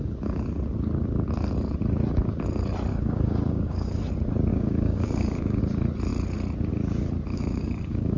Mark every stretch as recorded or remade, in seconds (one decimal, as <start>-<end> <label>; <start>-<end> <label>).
0.0-2.9 recorded; 2.9-4.0 remade; 4.0-4.5 recorded; 4.5-5.6 remade; 5.6-7.3 recorded; 7.3-8.2 remade